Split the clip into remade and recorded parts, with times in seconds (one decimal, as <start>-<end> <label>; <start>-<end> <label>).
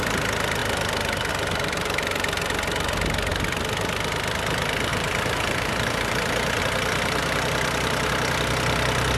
0.0-4.9 recorded; 4.9-6.6 remade; 6.6-7.2 recorded; 7.2-8.1 remade; 8.1-9.2 recorded